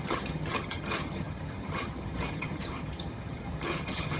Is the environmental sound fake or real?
fake